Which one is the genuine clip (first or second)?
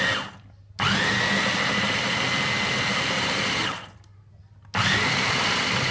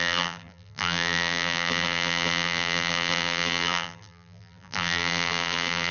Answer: first